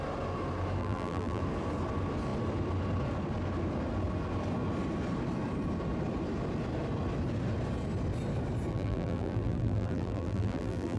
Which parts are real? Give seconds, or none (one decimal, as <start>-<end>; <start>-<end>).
0.0-0.8; 1.4-8.7